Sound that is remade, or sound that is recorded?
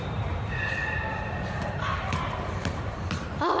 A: remade